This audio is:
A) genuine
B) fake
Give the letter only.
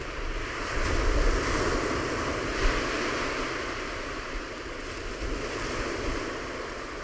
A